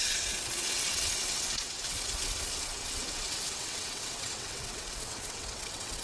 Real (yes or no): no